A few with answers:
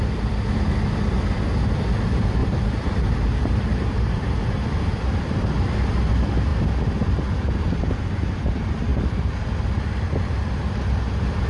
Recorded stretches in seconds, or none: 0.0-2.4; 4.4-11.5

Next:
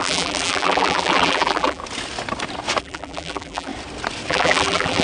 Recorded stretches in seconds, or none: 1.8-2.8; 3.7-4.3

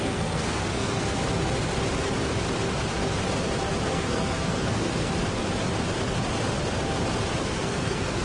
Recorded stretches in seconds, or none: 1.2-3.9; 5.2-7.4